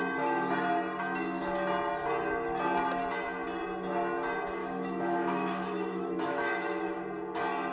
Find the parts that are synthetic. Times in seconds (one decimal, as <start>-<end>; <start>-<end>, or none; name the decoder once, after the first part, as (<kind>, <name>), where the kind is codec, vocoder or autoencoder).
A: 4.6-7.0 (autoencoder, DAC-VAE)